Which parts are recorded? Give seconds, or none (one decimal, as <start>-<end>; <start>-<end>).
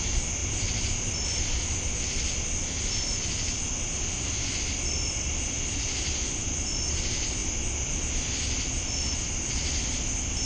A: 0.0-10.5